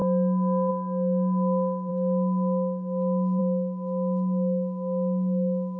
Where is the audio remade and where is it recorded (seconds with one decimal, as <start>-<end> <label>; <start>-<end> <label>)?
0.0-5.8 recorded